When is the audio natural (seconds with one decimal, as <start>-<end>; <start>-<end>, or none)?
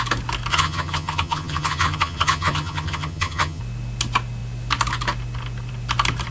0.0-0.5; 3.6-6.3